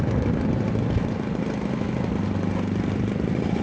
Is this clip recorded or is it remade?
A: recorded